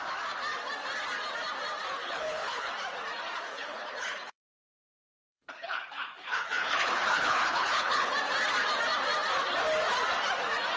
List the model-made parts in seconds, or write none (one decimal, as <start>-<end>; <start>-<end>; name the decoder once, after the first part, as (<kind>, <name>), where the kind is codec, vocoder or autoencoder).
2.0-2.7 (codec, HILCodec); 3.5-8.1